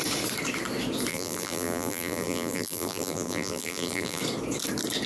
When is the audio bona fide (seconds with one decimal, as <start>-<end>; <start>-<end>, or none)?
0.0-1.1; 4.2-5.1